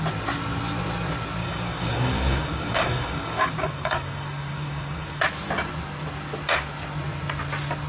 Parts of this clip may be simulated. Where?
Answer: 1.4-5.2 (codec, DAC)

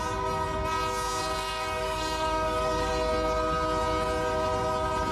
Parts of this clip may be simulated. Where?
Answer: 1.2-2.9 (codec, DAC)

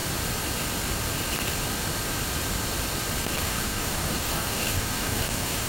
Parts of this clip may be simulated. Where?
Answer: 3.4-5.7 (codec, DAC)